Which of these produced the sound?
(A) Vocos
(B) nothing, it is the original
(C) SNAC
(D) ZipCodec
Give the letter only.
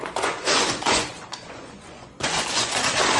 A